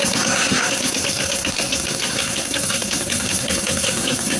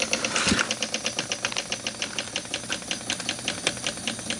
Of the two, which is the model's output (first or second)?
first